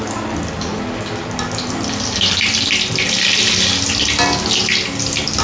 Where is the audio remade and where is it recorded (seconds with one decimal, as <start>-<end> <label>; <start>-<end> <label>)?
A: 0.0-5.4 recorded